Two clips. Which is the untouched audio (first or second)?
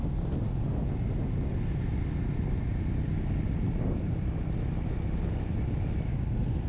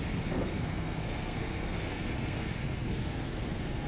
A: first